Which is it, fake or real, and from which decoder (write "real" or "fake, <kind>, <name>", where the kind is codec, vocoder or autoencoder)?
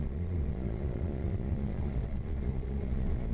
fake, vocoder, Vocos